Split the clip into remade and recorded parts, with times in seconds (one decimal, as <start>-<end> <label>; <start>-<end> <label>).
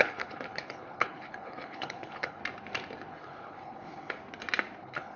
0.0-2.4 remade; 2.4-3.1 recorded; 3.1-4.2 remade; 4.2-4.8 recorded; 4.8-5.2 remade